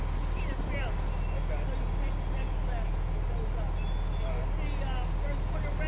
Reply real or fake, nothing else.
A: real